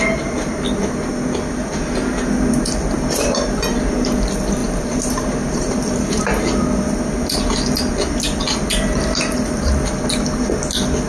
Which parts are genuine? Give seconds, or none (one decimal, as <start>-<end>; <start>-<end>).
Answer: 0.0-4.6; 6.3-11.1